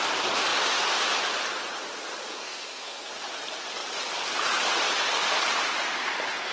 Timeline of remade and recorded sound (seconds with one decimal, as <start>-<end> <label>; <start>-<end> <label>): 0.0-2.3 recorded; 2.3-3.1 remade; 3.1-6.5 recorded